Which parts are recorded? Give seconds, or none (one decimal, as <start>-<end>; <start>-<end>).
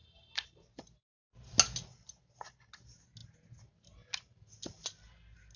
0.0-5.6